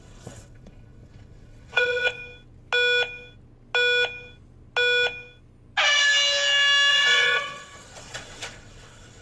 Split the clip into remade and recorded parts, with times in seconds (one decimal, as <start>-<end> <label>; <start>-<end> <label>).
0.0-2.2 remade; 2.2-6.9 recorded; 6.9-9.2 remade